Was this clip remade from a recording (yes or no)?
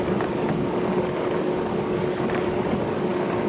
yes